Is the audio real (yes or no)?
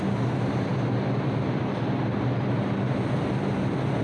yes